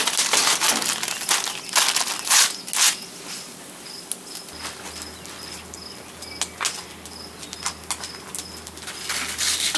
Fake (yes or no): no